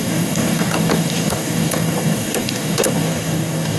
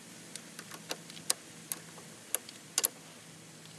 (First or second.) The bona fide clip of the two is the second